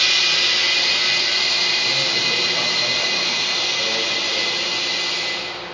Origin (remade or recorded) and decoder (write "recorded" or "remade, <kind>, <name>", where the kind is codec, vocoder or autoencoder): recorded